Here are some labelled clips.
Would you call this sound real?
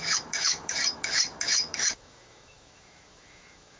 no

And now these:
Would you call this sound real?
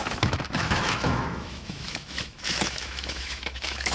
no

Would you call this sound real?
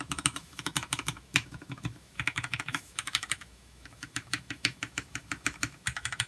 no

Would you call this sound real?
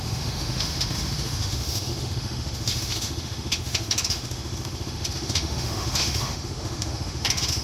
no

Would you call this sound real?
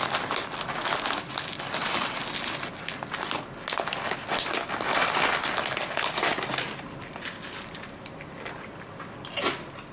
yes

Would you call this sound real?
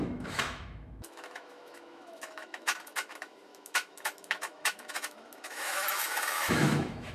no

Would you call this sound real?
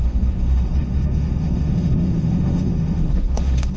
no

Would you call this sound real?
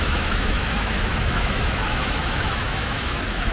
no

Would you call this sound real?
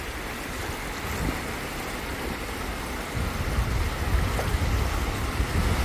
yes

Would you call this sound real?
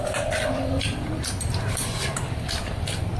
yes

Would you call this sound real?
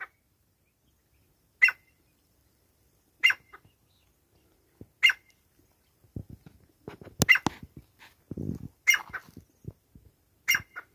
yes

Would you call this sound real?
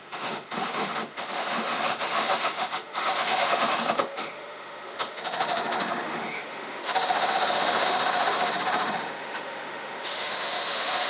no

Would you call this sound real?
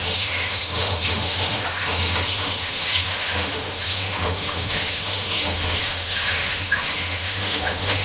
no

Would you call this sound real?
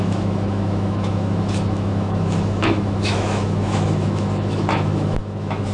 no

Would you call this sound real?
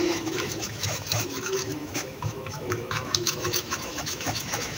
no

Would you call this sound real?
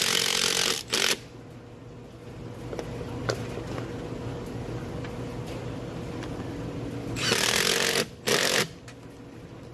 yes